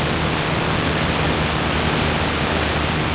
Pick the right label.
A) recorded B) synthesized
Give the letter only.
A